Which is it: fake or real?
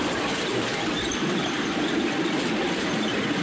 fake